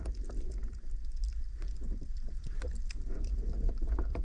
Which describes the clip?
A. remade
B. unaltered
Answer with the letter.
A